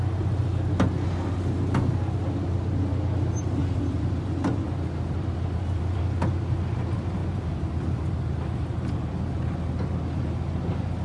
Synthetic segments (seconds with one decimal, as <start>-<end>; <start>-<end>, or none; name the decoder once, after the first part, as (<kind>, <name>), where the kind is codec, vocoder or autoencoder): 3.6-6.0 (vocoder, BigVGAN v2); 7.2-9.3